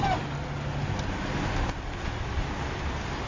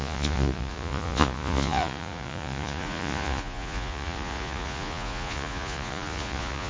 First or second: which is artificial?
second